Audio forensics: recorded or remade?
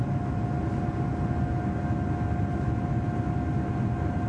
recorded